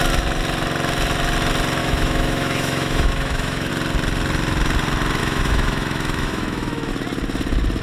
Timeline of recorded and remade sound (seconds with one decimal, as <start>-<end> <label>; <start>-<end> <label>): 0.0-1.8 recorded; 1.8-3.7 remade; 3.7-5.2 recorded; 5.2-6.9 remade; 6.9-7.8 recorded